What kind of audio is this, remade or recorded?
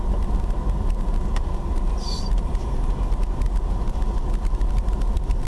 recorded